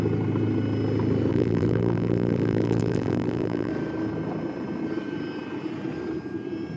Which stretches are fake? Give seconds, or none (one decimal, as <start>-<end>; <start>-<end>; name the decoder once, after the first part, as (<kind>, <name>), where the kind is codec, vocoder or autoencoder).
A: 1.3-3.7 (vocoder, BigVGAN v2)